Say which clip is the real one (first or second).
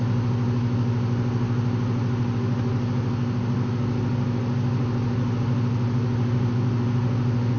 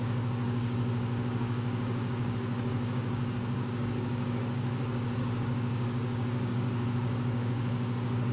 first